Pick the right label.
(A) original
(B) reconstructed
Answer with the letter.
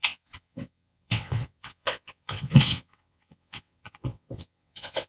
B